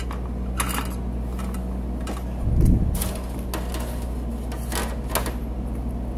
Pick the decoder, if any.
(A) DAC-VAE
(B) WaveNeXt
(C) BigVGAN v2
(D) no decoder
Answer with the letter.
D